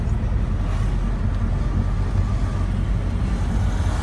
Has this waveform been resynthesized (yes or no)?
no